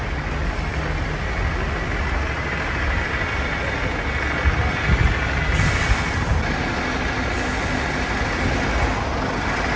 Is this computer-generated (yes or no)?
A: no